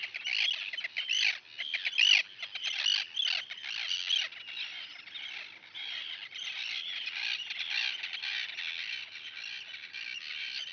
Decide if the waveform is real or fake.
real